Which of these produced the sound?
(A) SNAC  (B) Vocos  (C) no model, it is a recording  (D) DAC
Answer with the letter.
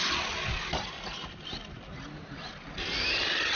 C